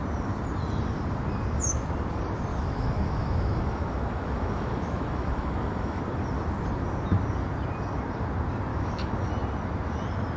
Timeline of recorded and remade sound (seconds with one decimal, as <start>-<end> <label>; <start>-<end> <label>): 0.0-2.5 recorded; 2.5-6.0 remade; 6.0-8.7 recorded; 8.7-9.3 remade; 9.3-10.4 recorded